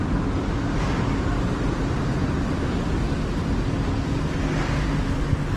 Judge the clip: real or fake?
real